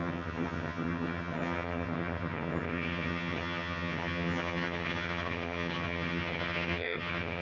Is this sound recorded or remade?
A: remade